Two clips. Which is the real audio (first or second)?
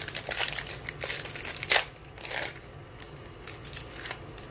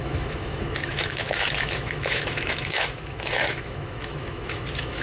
first